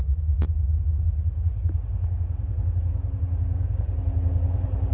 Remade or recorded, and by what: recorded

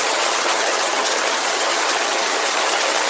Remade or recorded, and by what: remade, vocoder, HiFi-GAN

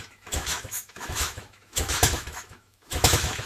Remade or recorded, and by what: remade, autoencoder, DAC-VAE